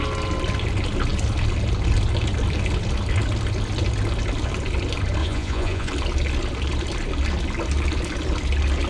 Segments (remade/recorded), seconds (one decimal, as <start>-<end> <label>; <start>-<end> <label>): 0.0-5.2 recorded; 5.2-5.9 remade; 5.9-8.9 recorded